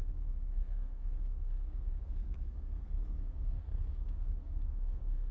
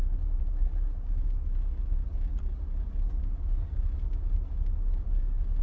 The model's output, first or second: first